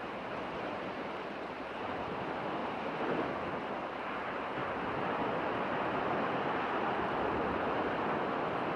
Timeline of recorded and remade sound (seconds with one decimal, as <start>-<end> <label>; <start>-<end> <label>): 0.0-2.6 remade; 2.6-3.5 recorded; 3.5-4.6 remade; 4.6-8.8 recorded